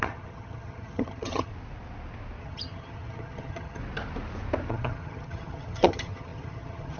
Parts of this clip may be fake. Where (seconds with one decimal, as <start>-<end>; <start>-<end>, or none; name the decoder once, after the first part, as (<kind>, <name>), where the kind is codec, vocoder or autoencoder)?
0.0-1.5 (vocoder, HiFi-GAN); 2.4-3.8; 4.7-7.0